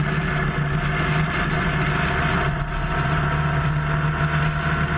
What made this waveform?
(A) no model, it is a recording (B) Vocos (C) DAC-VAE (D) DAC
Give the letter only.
A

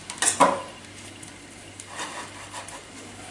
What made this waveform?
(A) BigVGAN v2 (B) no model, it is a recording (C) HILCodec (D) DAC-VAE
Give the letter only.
B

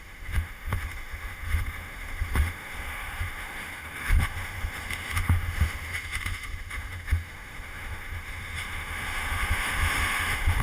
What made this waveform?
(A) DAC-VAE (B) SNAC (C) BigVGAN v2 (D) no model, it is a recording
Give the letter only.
A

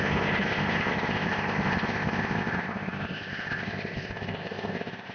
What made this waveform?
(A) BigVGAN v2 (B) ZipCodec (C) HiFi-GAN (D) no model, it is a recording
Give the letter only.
B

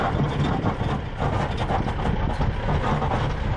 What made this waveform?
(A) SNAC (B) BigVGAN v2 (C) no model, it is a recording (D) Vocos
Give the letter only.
C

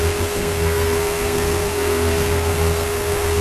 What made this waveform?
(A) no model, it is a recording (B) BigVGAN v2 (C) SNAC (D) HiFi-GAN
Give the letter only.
C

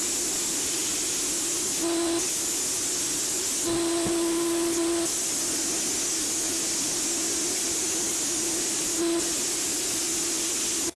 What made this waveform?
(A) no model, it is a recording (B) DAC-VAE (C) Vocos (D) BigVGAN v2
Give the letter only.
A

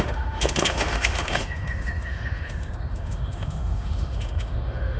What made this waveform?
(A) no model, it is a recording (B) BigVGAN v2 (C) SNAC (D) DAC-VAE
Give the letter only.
D